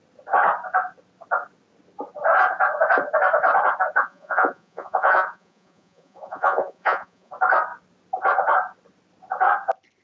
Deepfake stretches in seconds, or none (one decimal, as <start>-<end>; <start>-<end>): 4.0-7.3